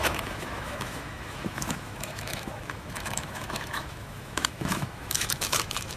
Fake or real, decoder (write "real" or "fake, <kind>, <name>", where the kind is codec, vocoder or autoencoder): fake, autoencoder, DAC-VAE